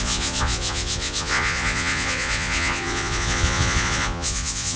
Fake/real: fake